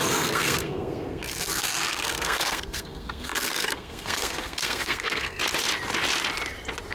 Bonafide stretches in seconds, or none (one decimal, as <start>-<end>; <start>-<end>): 5.4-6.9